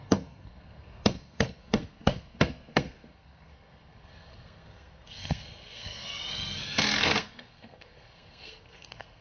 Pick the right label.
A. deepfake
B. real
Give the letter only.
A